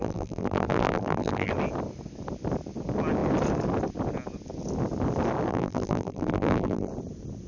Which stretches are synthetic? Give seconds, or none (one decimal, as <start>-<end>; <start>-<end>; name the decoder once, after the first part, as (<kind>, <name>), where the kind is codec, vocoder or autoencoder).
0.0-1.5 (vocoder, BigVGAN v2); 5.5-6.9